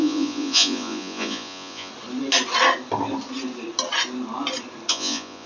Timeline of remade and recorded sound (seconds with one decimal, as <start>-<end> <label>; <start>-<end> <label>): 0.0-1.9 remade; 1.9-4.9 recorded; 4.9-5.5 remade